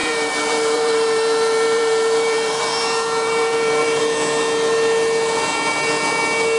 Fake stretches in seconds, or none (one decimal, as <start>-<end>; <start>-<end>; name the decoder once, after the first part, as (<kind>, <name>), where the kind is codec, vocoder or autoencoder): 0.0-4.0 (vocoder, BigVGAN v2)